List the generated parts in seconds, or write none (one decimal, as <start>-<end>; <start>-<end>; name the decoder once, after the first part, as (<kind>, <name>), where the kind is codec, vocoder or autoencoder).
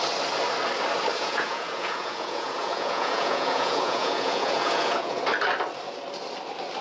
1.1-5.2 (vocoder, Vocos)